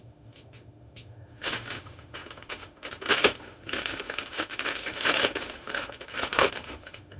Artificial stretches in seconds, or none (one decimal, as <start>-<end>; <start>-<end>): 0.0-7.2